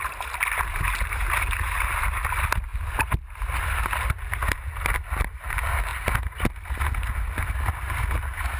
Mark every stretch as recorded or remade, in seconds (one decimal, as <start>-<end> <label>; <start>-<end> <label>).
0.0-8.6 recorded